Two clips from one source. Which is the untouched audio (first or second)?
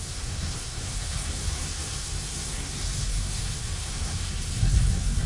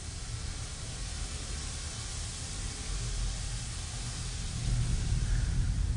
second